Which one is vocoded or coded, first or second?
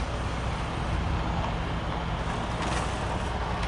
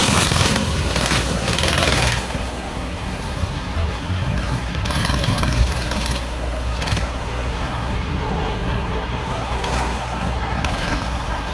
second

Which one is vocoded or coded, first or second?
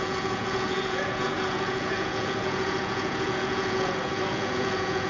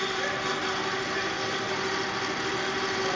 first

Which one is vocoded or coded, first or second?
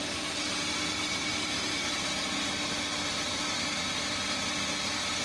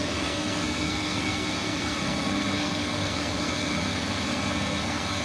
second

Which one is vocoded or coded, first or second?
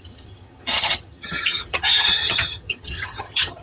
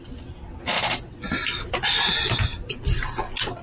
first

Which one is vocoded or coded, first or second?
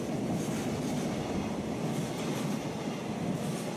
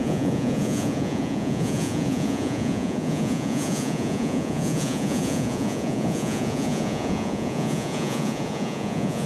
second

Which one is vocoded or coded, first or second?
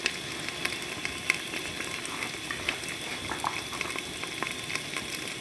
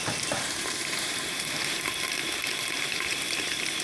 second